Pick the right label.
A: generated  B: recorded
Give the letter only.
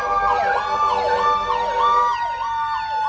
B